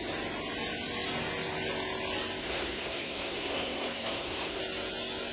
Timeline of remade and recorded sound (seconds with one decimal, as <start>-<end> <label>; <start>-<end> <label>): 0.0-2.4 recorded; 2.4-4.6 remade; 4.6-5.3 recorded